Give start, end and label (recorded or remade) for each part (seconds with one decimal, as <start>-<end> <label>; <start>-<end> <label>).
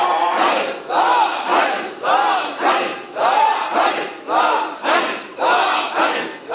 0.0-6.5 recorded